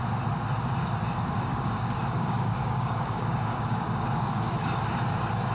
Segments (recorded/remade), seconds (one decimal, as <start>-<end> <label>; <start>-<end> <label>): 0.0-1.5 recorded; 1.5-4.8 remade; 4.8-5.5 recorded